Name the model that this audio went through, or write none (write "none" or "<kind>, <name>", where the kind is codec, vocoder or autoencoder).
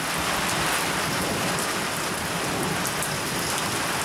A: none